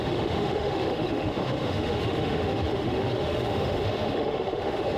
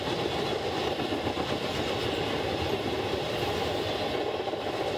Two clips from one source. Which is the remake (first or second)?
first